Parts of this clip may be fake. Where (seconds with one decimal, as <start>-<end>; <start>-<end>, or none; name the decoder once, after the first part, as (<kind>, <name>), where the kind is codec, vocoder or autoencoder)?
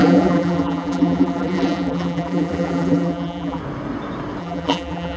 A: 0.0-3.6 (vocoder, BigVGAN v2); 4.4-5.2